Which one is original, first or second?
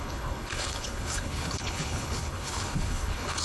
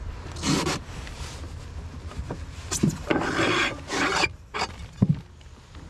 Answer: second